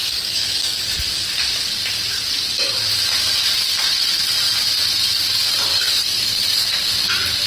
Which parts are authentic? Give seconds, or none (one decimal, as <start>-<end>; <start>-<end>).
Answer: 0.9-5.7; 6.7-7.5

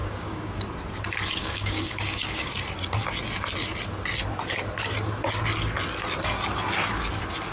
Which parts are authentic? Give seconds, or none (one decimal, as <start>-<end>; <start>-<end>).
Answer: 0.6-1.4; 2.5-7.5

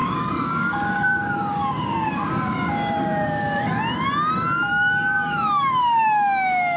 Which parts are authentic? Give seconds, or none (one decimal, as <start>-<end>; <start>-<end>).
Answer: 3.8-4.7

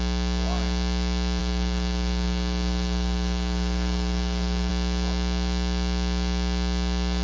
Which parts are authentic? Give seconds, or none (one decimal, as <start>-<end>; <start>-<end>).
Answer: 0.0-1.4; 4.7-7.2

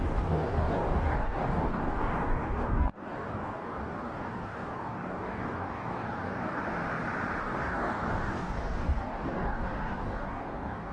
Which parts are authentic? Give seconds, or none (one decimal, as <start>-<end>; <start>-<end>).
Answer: 6.6-7.4